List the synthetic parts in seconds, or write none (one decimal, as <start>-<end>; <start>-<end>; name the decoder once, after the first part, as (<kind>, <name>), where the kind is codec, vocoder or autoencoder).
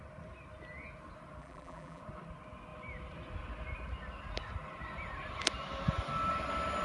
1.4-2.0 (vocoder, BigVGAN v2)